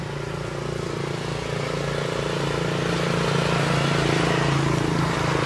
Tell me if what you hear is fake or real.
real